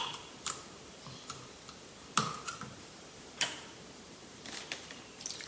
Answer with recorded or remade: remade